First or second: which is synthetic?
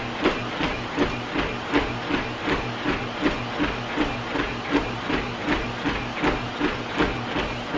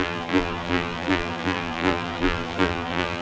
second